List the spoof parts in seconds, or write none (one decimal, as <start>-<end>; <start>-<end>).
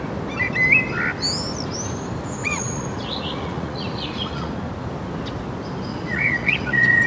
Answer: 2.4-4.5; 5.9-7.1